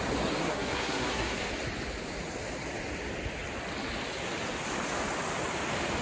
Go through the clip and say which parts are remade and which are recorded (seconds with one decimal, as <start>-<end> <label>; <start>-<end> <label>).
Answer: 0.0-0.4 recorded; 0.4-1.4 remade; 1.4-6.0 recorded